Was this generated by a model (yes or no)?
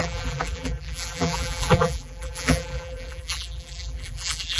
yes